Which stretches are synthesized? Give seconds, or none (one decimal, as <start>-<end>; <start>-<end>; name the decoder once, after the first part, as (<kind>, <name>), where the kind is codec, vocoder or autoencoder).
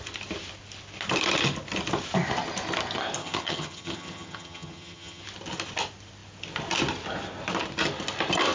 3.2-5.2 (vocoder, HiFi-GAN)